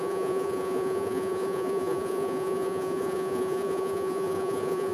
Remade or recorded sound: remade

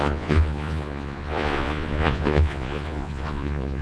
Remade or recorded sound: remade